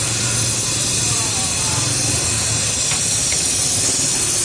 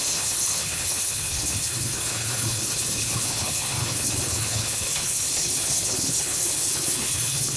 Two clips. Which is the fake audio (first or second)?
second